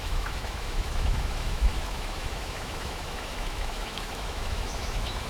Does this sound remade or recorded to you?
remade